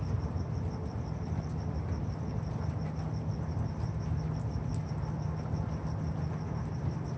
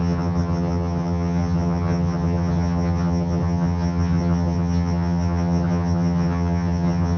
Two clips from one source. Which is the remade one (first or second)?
second